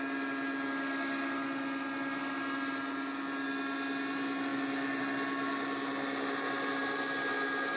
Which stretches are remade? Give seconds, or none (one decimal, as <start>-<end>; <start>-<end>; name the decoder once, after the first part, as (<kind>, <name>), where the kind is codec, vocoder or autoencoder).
none